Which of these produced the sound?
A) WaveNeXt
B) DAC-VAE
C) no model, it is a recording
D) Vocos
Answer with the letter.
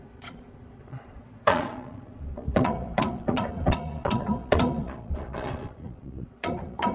D